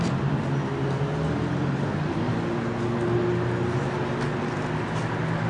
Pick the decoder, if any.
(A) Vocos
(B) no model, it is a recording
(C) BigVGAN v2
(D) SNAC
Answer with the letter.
B